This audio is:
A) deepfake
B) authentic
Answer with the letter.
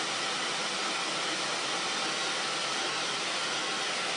B